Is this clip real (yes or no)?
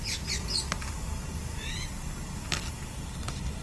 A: yes